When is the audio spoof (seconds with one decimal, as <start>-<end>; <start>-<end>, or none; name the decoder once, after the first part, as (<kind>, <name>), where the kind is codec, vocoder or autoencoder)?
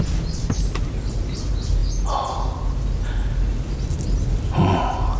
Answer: none